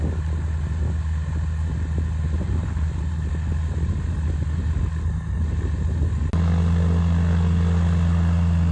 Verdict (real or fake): real